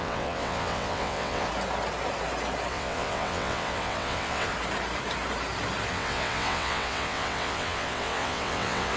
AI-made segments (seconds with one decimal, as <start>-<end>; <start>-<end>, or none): 0.0-1.5; 2.7-4.5; 5.9-9.0